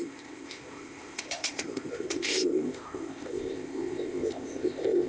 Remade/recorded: remade